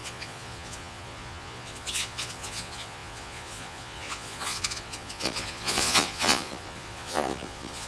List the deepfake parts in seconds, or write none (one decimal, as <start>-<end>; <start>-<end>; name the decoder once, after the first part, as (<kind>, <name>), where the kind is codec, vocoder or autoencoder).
0.0-7.9 (vocoder, Vocos)